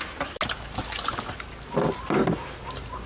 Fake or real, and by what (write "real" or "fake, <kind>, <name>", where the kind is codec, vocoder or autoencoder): real